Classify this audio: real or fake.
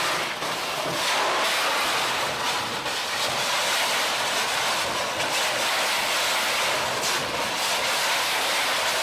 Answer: real